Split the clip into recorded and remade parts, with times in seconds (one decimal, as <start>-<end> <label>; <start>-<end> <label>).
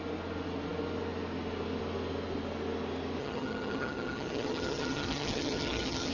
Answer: 0.0-3.2 recorded; 3.2-6.1 remade